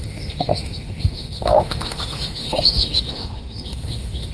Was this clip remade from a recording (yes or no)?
yes